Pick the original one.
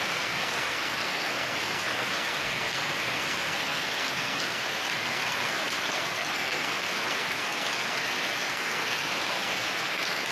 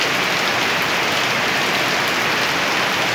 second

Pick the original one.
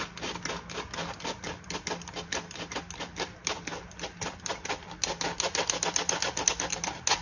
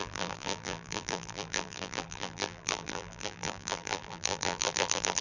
first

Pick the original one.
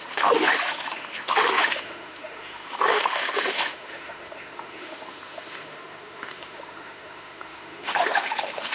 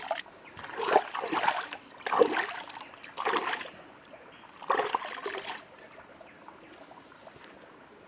second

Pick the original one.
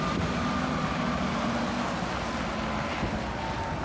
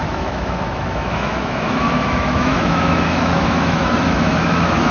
first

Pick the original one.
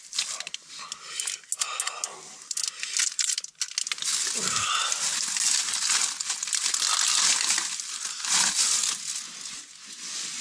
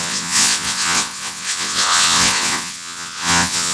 first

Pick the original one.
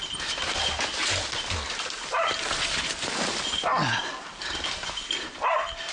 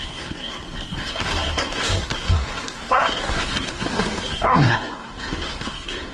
first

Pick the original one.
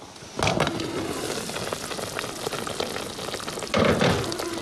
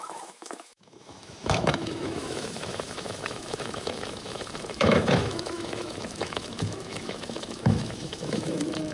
first